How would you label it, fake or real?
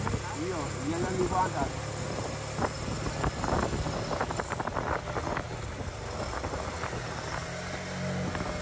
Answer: real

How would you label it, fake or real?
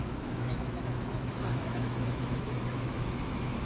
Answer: fake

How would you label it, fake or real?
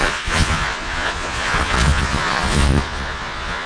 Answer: fake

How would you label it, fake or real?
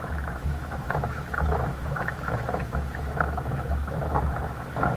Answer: fake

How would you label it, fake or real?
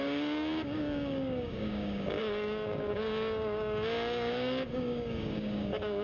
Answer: fake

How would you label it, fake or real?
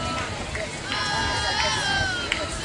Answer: real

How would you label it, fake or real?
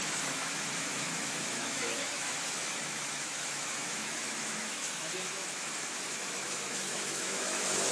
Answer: fake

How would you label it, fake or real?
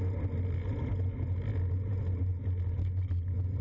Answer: real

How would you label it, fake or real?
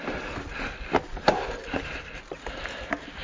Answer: real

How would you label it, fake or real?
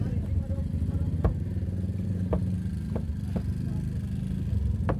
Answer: real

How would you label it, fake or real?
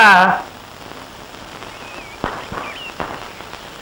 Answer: real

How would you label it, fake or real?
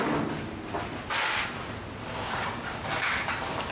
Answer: real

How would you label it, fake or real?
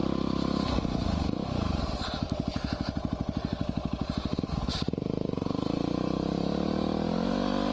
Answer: real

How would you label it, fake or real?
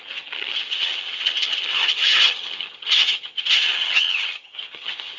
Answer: fake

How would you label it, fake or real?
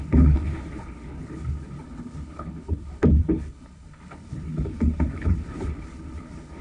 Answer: fake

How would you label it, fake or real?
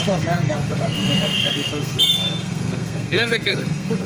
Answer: fake